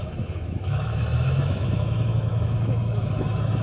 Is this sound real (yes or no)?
no